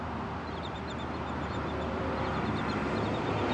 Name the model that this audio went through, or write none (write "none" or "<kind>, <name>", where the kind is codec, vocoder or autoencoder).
none